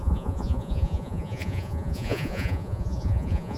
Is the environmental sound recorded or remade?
remade